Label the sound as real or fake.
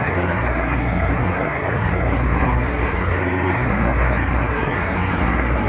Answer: fake